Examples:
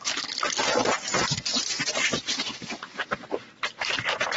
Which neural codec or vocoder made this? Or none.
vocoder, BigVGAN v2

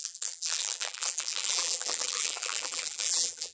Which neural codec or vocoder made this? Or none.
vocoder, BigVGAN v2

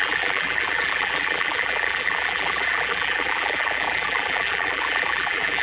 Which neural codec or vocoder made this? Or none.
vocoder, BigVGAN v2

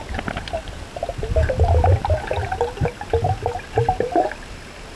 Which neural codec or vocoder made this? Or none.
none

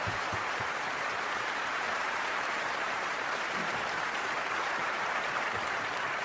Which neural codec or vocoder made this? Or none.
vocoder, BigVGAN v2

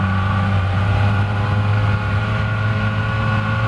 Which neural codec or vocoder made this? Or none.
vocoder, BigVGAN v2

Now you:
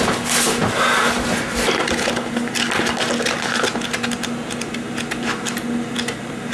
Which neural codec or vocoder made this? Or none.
none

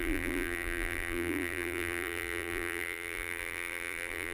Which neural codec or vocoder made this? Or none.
vocoder, BigVGAN v2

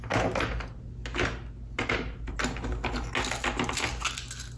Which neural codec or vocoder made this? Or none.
none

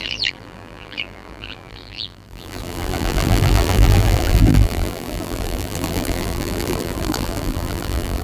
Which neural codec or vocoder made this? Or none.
vocoder, BigVGAN v2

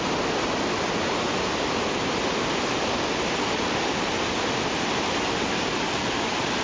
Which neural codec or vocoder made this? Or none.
none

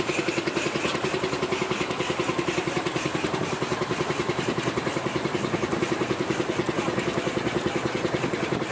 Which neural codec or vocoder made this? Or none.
none